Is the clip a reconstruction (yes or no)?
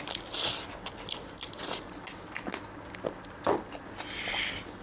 no